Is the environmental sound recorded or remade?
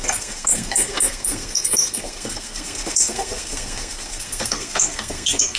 remade